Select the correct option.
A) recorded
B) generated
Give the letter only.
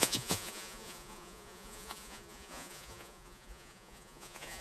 B